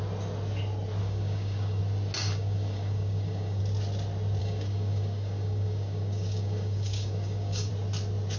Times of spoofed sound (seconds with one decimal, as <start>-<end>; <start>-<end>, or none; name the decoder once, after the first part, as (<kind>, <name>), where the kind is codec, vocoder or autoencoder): 1.0-1.8 (codec, DAC); 2.2-3.6; 4.4-7.7